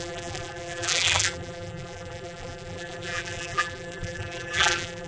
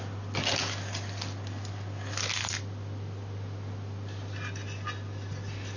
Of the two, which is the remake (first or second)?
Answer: first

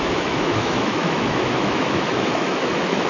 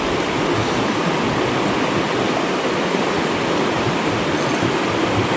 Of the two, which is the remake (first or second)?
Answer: first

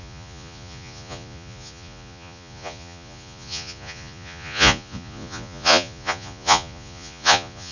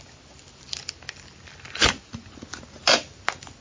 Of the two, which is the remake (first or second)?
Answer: first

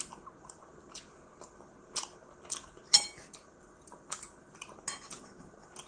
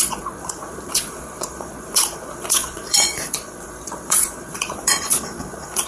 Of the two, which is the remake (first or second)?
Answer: second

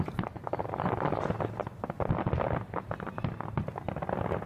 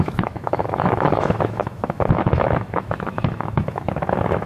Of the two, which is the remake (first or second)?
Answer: second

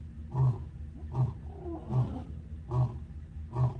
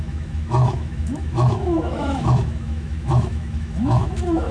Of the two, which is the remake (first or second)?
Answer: second